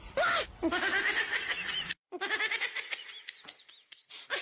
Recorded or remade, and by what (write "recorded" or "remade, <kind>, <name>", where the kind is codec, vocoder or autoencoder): recorded